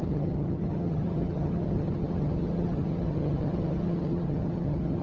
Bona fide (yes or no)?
no